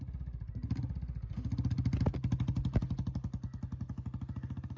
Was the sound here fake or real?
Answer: real